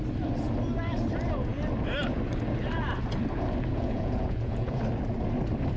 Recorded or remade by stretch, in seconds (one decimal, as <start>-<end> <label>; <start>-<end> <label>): 0.0-3.7 recorded; 3.7-4.8 remade; 4.8-5.8 recorded